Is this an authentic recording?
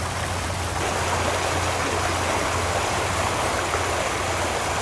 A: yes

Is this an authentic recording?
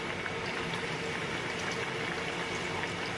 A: yes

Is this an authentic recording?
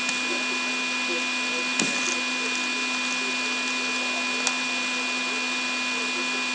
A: yes